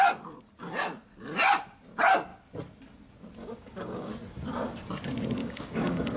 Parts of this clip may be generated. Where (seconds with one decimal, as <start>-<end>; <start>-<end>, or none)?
3.4-4.1; 5.4-6.2